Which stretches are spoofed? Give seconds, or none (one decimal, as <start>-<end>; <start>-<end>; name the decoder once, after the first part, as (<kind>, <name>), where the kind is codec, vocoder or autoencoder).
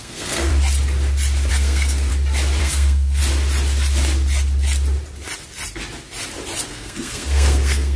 0.0-0.5 (codec, SNAC); 1.5-2.1; 2.6-3.2; 6.7-8.0